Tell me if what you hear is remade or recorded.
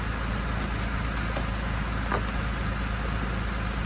recorded